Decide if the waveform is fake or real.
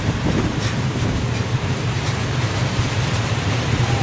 fake